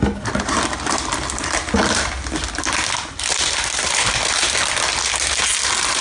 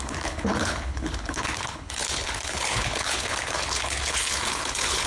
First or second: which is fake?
second